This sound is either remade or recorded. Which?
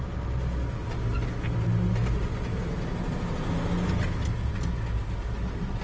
recorded